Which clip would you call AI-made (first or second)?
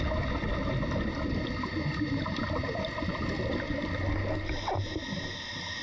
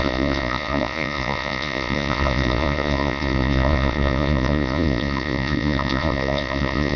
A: second